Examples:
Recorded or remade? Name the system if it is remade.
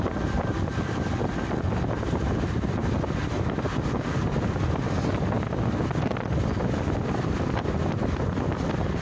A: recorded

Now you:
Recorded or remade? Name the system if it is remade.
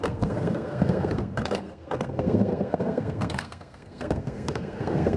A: remade, codec, SNAC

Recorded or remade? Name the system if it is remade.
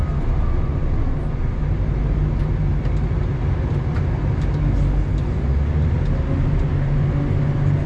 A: recorded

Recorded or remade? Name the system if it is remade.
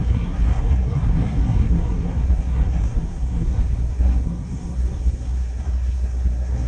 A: remade, codec, SNAC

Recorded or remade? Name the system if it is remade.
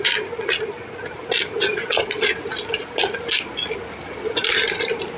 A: recorded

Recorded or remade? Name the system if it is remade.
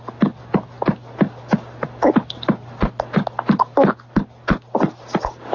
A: recorded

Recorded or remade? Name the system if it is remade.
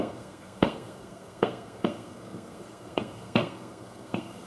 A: remade, codec, SNAC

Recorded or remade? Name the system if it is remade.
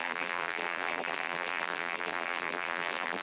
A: remade, vocoder, BigVGAN v2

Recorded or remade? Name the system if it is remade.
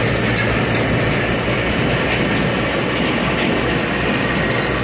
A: recorded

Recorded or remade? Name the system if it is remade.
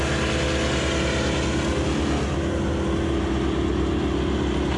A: recorded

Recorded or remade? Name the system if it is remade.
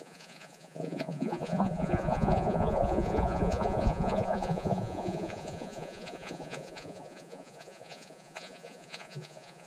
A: remade, vocoder, Vocos